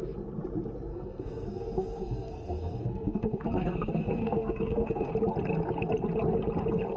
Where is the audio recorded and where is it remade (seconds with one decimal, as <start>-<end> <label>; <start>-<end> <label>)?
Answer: 0.0-0.9 recorded; 0.9-5.1 remade; 5.1-7.0 recorded